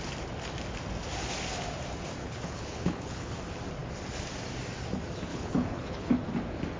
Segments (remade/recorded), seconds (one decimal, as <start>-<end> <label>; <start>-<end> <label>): 0.0-2.2 recorded; 2.2-3.4 remade; 3.4-5.3 recorded; 5.3-6.1 remade; 6.1-6.8 recorded